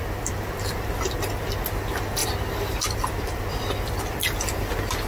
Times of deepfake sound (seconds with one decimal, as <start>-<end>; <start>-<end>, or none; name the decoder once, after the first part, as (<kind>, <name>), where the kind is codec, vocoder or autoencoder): none